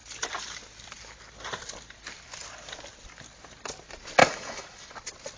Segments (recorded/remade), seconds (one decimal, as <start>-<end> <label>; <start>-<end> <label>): 0.0-4.2 recorded; 4.2-4.9 remade; 4.9-5.4 recorded